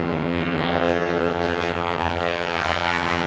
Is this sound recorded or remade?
remade